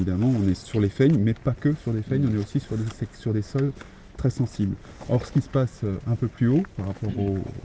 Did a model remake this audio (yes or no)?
no